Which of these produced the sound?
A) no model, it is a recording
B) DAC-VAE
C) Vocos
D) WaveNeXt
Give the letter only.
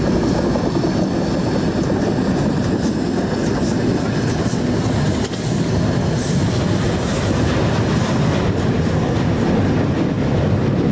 A